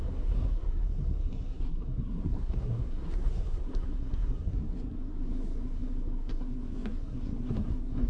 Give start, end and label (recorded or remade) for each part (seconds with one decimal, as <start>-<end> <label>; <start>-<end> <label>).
0.0-8.1 remade